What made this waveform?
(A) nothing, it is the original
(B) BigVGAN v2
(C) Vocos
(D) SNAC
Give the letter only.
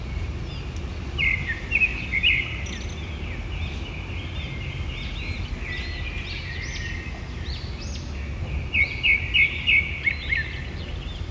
A